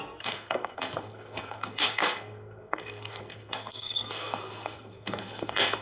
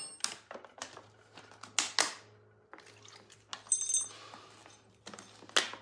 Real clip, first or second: second